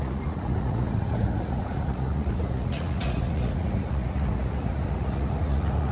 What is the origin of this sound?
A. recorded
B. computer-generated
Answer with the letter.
B